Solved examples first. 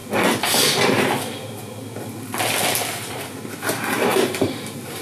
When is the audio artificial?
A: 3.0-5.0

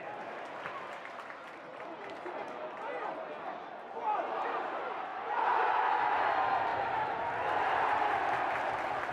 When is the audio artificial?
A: 5.1-5.7; 6.7-7.7

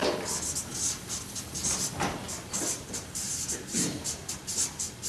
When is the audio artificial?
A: 2.4-4.4